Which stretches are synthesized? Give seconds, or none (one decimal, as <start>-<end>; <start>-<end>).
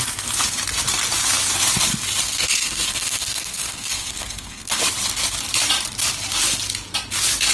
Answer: 2.2-4.8